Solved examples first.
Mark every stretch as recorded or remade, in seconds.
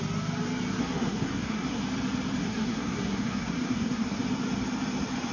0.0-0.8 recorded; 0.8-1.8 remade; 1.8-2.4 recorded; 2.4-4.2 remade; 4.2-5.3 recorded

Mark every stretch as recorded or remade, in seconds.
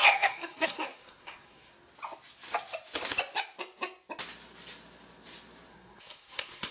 0.0-1.7 remade; 1.7-5.7 recorded; 5.7-6.7 remade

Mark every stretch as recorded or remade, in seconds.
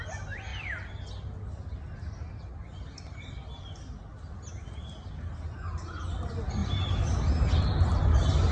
0.0-8.5 recorded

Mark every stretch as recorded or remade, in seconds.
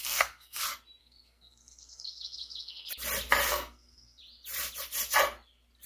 0.0-0.6 remade; 0.6-1.0 recorded; 1.0-2.9 remade; 2.9-3.5 recorded; 3.5-4.2 remade; 4.2-5.9 recorded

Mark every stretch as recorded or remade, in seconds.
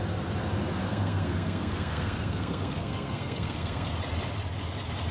0.0-0.8 recorded; 0.8-3.9 remade; 3.9-5.1 recorded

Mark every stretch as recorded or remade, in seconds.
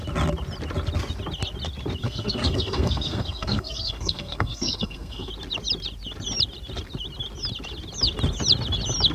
0.0-2.0 recorded; 2.0-5.3 remade; 5.3-9.1 recorded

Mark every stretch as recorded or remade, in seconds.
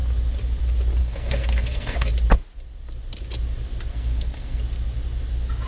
0.0-1.0 recorded; 1.0-2.1 remade; 2.1-3.9 recorded; 3.9-4.6 remade; 4.6-5.7 recorded